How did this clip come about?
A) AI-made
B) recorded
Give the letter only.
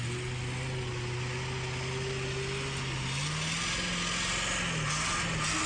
B